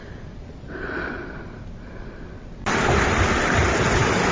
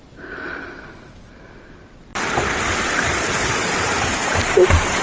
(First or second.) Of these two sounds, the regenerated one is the first